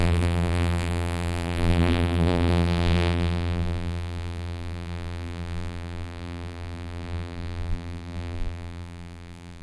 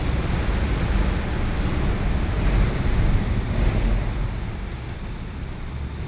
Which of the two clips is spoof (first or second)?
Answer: first